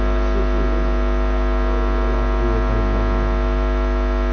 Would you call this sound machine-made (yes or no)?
no